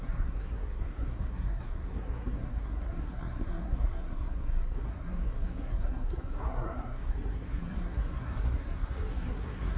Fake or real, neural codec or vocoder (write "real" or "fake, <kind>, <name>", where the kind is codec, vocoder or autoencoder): fake, codec, SNAC